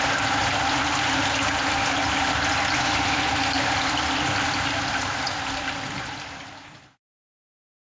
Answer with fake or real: real